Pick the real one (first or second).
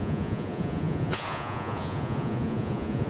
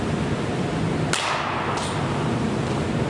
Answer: second